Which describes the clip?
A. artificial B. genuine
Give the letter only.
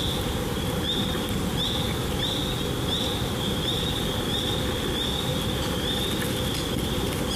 B